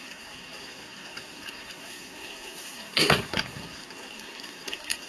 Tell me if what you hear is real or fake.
fake